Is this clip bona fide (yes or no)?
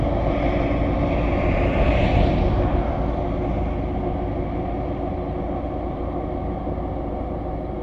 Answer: yes